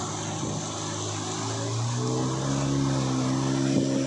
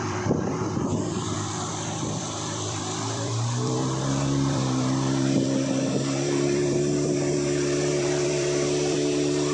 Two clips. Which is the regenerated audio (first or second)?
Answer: second